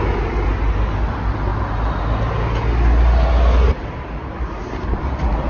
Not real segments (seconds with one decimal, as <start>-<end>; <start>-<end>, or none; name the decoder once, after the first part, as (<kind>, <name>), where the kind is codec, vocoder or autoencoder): none